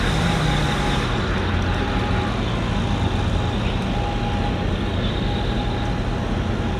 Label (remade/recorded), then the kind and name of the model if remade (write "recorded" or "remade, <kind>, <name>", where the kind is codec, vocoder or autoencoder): recorded